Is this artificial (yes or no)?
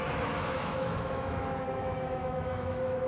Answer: yes